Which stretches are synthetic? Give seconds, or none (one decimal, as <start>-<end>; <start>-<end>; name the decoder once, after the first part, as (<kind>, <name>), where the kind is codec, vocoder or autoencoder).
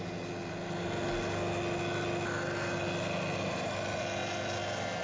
none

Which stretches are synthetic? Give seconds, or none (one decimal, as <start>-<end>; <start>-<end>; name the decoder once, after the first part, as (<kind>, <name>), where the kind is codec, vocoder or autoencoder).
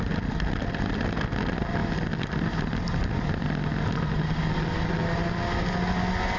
none